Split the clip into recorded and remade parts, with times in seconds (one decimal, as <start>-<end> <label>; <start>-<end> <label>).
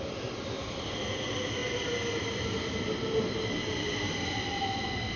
0.0-5.2 recorded